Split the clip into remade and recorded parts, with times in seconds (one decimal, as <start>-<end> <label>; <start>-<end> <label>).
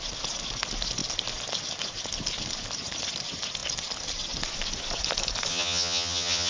0.0-5.5 recorded; 5.5-6.5 remade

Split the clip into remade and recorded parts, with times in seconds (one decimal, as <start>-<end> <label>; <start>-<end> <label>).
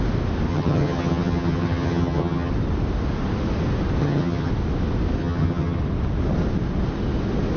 0.0-0.5 recorded; 0.5-2.5 remade; 2.5-4.0 recorded; 4.0-4.5 remade; 4.5-5.2 recorded; 5.2-5.8 remade; 5.8-7.6 recorded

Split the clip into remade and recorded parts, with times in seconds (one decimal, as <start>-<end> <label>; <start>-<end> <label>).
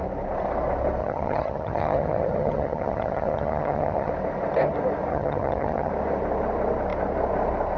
0.0-1.0 recorded; 1.0-4.1 remade; 4.1-5.1 recorded; 5.1-5.9 remade; 5.9-7.8 recorded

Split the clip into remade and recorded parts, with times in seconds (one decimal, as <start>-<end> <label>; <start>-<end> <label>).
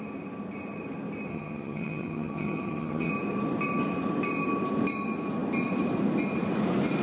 0.0-1.3 recorded; 1.3-3.1 remade; 3.1-7.0 recorded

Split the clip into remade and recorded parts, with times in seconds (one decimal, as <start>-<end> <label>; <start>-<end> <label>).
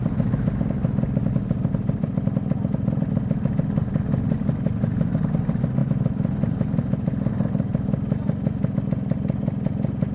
0.0-10.1 recorded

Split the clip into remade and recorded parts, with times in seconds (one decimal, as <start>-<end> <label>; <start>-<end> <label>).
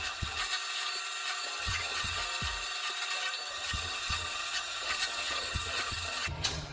0.0-0.4 remade; 0.4-1.6 recorded; 1.6-2.2 remade; 2.2-3.5 recorded; 3.5-6.7 remade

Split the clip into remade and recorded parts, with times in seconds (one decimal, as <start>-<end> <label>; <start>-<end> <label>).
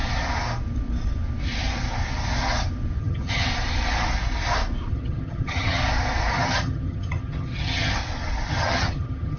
0.0-3.0 recorded; 3.0-3.5 remade; 3.5-4.9 recorded; 4.9-5.8 remade; 5.8-6.3 recorded; 6.3-8.0 remade; 8.0-8.5 recorded; 8.5-9.4 remade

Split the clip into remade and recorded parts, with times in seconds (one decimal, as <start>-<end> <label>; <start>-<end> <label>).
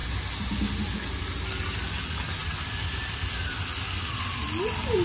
0.0-5.0 recorded